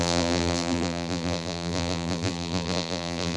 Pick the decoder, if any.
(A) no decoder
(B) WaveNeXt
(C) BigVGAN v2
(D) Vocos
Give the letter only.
C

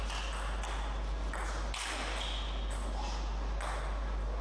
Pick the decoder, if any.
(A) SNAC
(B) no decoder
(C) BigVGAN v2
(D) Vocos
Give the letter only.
B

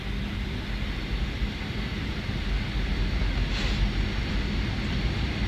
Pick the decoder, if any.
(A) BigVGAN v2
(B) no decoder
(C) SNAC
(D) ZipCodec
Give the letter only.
A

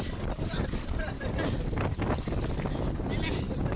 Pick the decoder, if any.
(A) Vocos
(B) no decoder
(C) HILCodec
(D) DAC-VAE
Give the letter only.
B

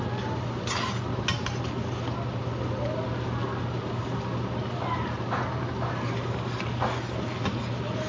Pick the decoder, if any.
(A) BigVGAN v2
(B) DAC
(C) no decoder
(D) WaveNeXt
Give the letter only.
C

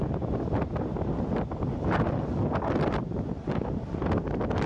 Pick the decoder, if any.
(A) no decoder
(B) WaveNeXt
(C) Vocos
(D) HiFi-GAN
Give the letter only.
A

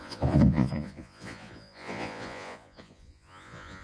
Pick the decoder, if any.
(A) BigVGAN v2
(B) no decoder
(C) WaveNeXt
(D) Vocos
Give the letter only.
D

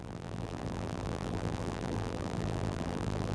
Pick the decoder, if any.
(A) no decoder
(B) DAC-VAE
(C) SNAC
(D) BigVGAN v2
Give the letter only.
D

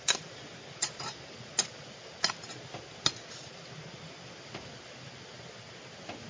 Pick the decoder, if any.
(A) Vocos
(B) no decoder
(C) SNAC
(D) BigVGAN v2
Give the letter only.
B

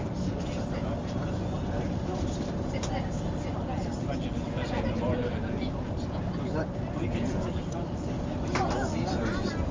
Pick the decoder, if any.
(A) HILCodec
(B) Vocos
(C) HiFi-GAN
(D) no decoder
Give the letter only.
D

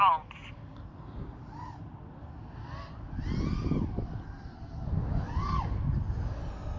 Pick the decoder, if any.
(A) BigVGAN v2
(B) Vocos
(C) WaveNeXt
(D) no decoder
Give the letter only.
D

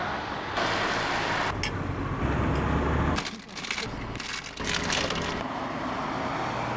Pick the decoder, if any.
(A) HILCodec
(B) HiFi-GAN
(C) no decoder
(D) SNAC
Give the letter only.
C